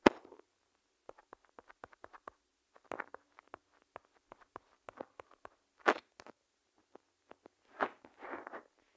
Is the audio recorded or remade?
recorded